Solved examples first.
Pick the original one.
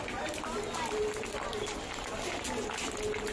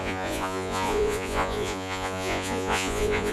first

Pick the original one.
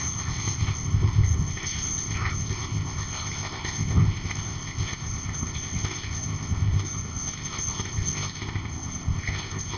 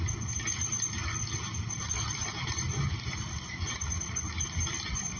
second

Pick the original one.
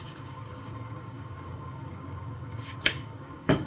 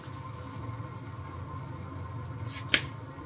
second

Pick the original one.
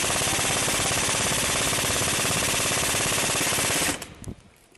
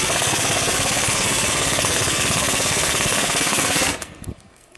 first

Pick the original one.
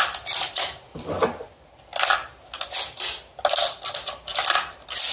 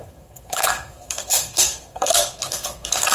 first